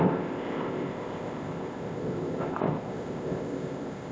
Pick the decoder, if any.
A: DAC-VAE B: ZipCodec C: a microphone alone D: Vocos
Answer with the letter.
B